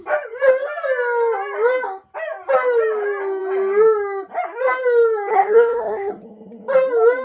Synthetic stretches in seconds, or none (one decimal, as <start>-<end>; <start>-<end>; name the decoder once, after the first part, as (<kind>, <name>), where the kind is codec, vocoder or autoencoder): 5.3-6.1 (codec, SNAC)